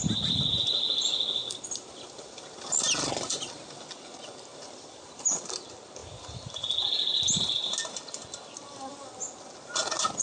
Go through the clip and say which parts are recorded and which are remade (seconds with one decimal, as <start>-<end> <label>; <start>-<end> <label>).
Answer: 0.0-1.4 recorded; 1.4-1.9 remade; 1.9-4.5 recorded; 4.5-5.4 remade; 5.4-6.0 recorded; 6.0-7.2 remade; 7.2-10.2 recorded